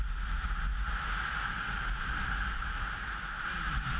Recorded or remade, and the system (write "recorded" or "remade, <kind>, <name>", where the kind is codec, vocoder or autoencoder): recorded